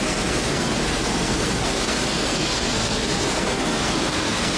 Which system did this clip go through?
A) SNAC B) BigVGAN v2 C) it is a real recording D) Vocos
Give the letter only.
A